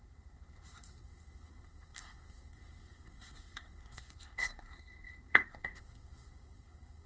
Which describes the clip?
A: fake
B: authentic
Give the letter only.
A